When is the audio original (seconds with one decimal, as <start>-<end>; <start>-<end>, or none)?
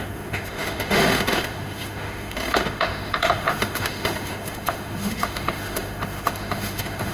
none